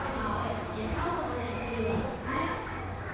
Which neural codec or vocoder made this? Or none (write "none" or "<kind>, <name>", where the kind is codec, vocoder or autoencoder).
codec, DAC